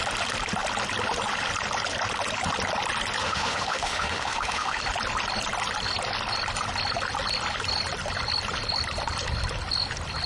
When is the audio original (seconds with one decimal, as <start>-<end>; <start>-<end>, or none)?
0.0-3.2; 4.8-10.3